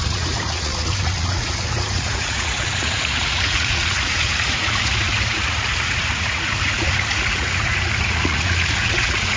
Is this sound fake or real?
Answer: fake